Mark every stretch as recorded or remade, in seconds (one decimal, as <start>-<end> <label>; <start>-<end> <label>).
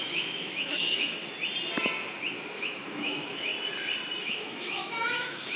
0.0-1.2 remade; 1.2-2.5 recorded; 2.5-3.5 remade; 3.5-4.2 recorded; 4.2-5.6 remade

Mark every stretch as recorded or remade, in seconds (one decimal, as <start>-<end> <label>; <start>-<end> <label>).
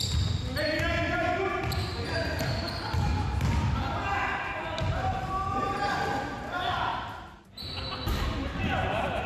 0.0-6.9 recorded; 6.9-7.6 remade; 7.6-9.3 recorded